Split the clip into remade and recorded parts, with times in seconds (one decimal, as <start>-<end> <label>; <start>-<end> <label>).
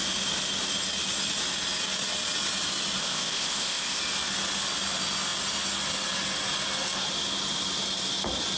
0.0-3.0 recorded; 3.0-4.0 remade; 4.0-8.6 recorded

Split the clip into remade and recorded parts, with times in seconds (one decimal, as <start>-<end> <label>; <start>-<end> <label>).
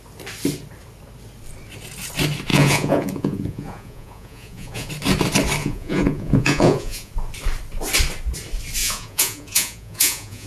0.0-2.5 recorded; 2.5-4.9 remade; 4.9-5.6 recorded; 5.6-7.1 remade; 7.1-8.8 recorded; 8.8-10.5 remade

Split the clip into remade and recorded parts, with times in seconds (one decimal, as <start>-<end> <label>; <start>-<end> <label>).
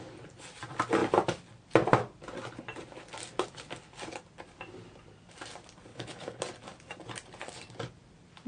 0.0-5.9 recorded; 5.9-6.4 remade; 6.4-8.5 recorded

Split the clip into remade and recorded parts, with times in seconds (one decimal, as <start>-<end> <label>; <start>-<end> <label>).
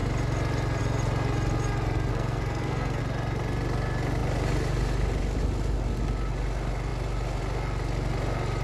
0.0-2.1 recorded; 2.1-3.0 remade; 3.0-8.6 recorded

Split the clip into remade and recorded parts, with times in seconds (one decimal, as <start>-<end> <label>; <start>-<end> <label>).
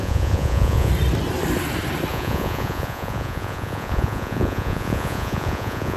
0.0-0.9 remade; 0.9-2.1 recorded; 2.1-6.0 remade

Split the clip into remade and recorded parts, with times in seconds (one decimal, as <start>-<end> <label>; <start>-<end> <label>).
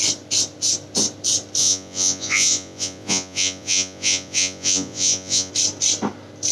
0.0-1.6 recorded; 1.6-5.5 remade; 5.5-6.5 recorded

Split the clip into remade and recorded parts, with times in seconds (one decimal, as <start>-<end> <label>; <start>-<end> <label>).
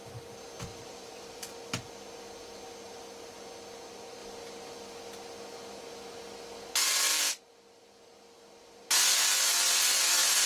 0.0-0.7 recorded; 0.7-1.4 remade; 1.4-10.5 recorded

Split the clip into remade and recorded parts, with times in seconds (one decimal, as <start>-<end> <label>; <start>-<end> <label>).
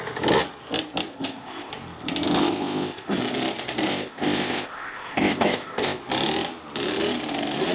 0.0-1.1 recorded; 1.1-1.7 remade; 1.7-2.4 recorded; 2.4-3.2 remade; 3.2-3.9 recorded; 3.9-6.0 remade; 6.0-7.7 recorded